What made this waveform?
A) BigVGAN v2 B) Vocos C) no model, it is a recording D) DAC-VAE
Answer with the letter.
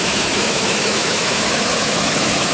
D